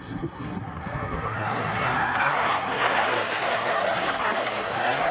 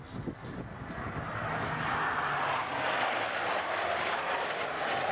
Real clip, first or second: second